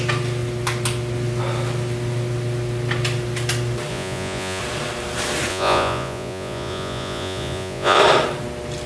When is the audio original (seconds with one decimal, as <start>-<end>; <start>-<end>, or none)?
0.0-3.9; 4.6-5.5; 8.0-8.9